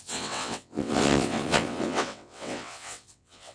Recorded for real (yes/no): no